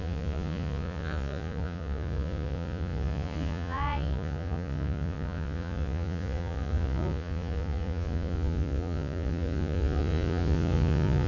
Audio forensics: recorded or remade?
remade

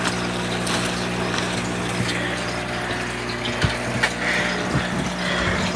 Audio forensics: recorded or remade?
recorded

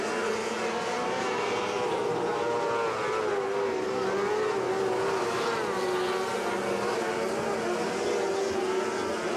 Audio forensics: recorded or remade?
recorded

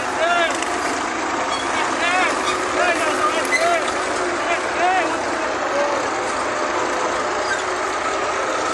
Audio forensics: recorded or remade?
recorded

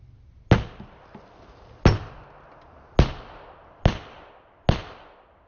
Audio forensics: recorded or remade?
recorded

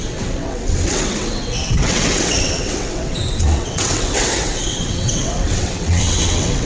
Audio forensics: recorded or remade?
remade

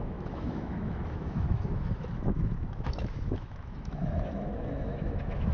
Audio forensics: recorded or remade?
remade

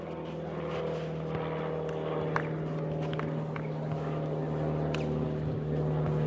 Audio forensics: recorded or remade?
recorded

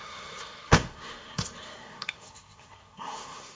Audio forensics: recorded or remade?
remade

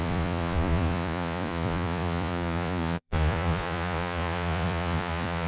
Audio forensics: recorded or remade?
remade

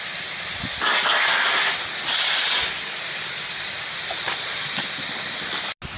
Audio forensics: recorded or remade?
recorded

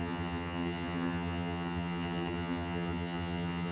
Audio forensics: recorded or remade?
remade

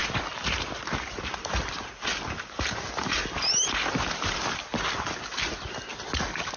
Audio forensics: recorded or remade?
recorded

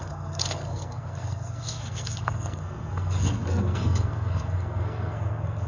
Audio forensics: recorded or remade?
remade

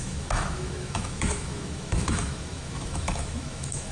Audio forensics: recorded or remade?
remade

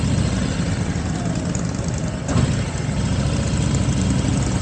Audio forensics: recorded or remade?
recorded